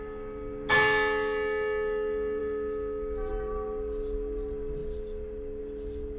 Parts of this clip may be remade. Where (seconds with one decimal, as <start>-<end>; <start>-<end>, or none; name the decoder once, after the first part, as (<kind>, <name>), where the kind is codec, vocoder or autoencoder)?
none